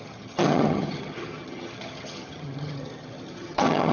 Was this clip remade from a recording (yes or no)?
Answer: yes